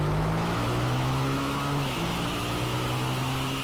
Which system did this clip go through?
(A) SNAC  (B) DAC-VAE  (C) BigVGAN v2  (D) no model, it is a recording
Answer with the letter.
B